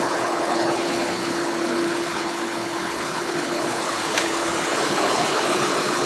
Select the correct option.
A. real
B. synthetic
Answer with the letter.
B